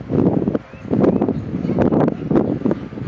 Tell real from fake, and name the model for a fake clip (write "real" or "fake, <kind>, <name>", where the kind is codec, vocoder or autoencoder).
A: real